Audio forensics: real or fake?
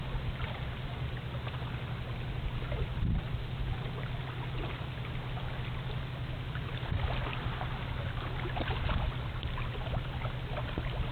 real